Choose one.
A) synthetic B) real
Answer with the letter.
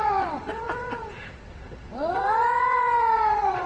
A